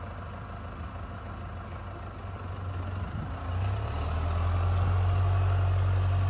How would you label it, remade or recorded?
recorded